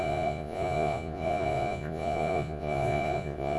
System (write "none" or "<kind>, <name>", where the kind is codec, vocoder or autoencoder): vocoder, Vocos